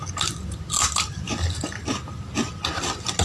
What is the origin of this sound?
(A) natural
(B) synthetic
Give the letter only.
A